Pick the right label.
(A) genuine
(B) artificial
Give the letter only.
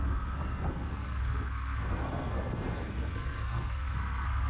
B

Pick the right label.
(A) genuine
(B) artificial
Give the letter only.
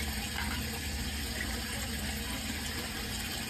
A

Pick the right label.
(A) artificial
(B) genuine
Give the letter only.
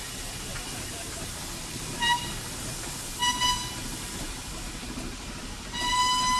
B